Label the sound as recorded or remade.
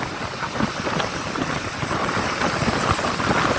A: recorded